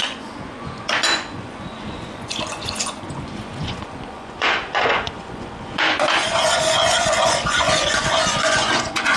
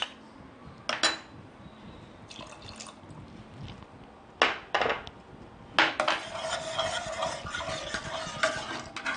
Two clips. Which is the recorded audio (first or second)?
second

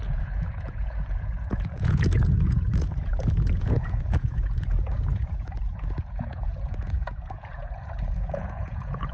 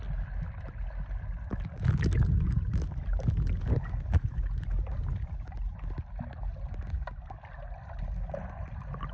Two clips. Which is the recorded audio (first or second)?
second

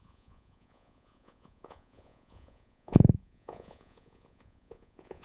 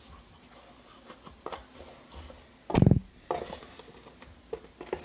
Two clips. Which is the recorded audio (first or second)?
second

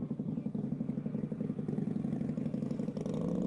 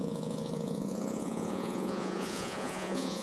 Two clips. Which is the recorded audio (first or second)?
first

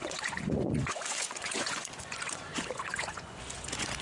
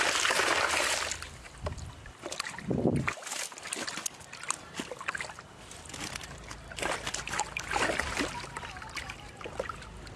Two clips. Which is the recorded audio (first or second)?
second